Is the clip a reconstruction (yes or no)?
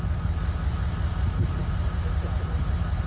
no